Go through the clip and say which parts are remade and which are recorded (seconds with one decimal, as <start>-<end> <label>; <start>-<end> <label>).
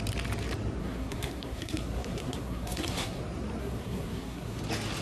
0.0-0.8 recorded; 0.8-3.2 remade; 3.2-3.6 recorded; 3.6-4.6 remade; 4.6-5.0 recorded